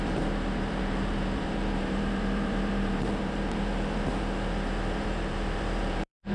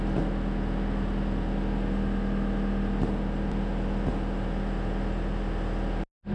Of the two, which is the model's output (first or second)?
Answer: first